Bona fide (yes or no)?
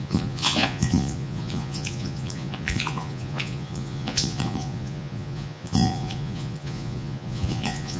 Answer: no